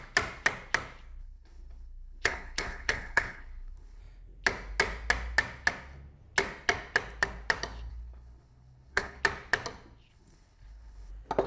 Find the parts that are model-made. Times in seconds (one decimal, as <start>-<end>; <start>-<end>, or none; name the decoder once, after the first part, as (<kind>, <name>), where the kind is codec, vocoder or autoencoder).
1.2-4.0 (codec, HILCodec); 7.9-9.2; 10.1-11.1